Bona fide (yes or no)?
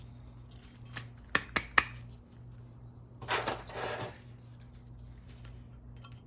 yes